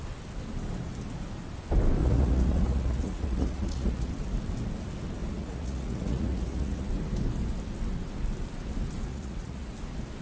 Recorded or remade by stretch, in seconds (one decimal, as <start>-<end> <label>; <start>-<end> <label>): 0.0-2.0 recorded; 2.0-4.1 remade; 4.1-5.2 recorded; 5.2-6.9 remade; 6.9-9.1 recorded; 9.1-9.7 remade; 9.7-10.2 recorded